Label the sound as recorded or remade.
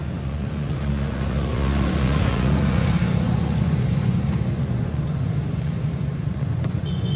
remade